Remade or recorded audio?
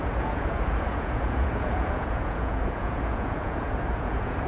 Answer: remade